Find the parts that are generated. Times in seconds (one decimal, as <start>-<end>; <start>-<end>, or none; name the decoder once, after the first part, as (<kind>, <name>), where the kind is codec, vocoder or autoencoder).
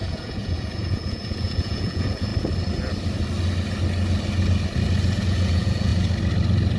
0.0-2.3 (vocoder, Vocos); 5.2-5.9